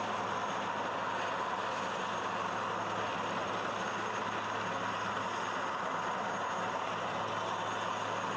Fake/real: real